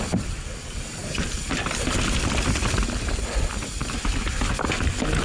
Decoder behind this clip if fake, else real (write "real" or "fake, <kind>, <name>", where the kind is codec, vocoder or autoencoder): real